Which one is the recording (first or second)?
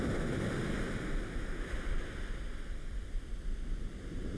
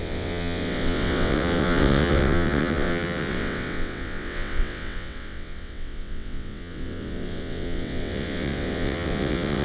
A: first